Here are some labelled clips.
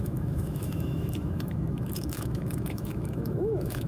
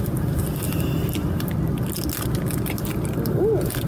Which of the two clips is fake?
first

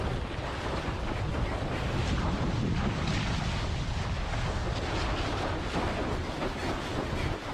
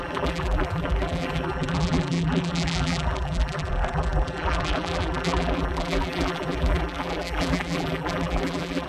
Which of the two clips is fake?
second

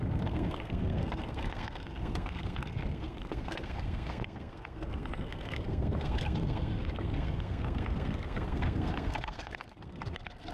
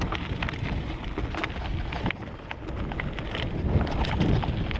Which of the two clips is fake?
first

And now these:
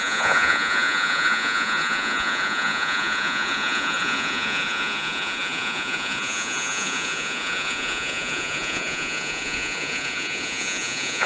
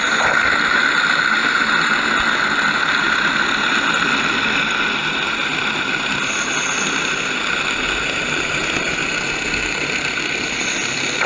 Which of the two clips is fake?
first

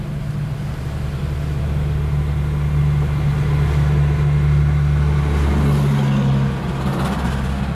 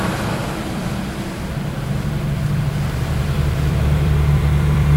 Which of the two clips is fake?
second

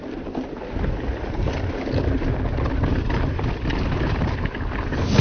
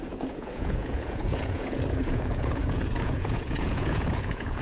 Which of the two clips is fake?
second